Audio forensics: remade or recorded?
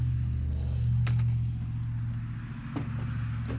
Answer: recorded